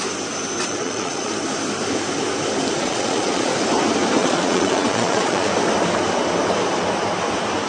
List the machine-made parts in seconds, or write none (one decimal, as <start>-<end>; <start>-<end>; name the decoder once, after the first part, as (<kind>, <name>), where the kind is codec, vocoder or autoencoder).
0.6-1.3 (vocoder, Vocos); 2.8-3.5; 4.2-5.5